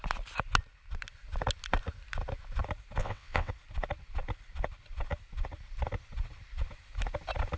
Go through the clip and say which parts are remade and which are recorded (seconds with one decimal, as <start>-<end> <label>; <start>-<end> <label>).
0.0-3.0 recorded; 3.0-3.5 remade; 3.5-7.6 recorded